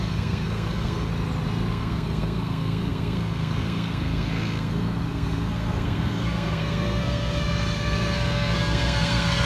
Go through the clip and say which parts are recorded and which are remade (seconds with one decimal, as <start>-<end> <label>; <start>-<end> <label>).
0.0-1.1 remade; 1.1-1.7 recorded; 1.7-9.5 remade